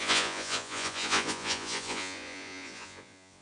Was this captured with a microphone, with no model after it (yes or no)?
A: no